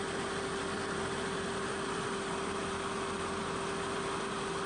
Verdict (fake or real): real